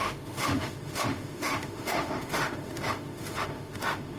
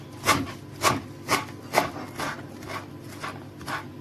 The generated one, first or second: first